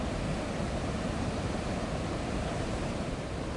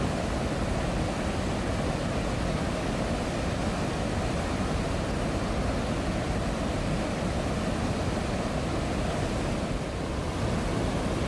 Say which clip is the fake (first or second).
first